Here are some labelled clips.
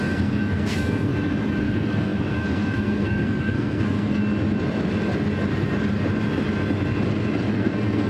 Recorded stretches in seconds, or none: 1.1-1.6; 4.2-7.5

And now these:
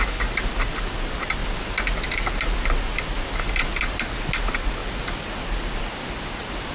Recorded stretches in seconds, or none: 0.0-6.7